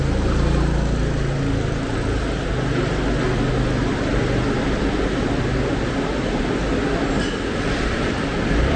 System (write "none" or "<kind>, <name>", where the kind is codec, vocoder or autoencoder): none